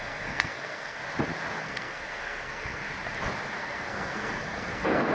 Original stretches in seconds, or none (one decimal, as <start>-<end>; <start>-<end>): 1.0-1.6; 2.8-3.6